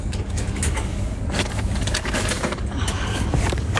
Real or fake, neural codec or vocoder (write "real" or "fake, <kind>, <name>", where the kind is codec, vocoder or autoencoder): fake, codec, DAC